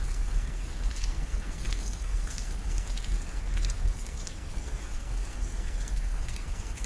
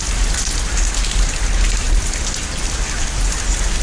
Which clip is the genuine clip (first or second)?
second